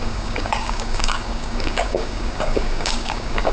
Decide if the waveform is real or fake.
fake